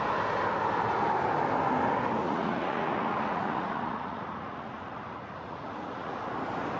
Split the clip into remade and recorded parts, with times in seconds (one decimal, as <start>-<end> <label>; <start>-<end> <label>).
0.0-2.2 recorded; 2.2-6.3 remade; 6.3-6.8 recorded